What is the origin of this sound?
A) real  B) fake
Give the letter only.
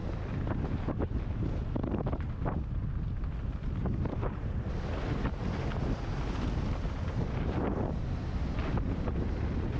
A